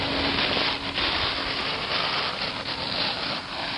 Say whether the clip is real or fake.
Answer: real